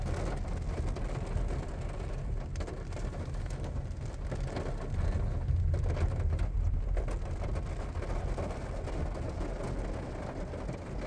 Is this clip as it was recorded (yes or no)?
yes